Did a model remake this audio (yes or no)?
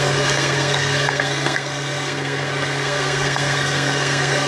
yes